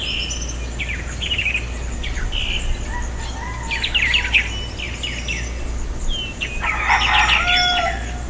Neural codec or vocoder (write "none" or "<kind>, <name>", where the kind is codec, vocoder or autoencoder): none